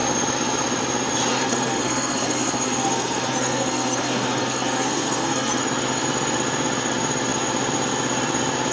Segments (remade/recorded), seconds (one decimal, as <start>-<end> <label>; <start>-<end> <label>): 0.0-1.3 recorded; 1.3-5.6 remade; 5.6-8.7 recorded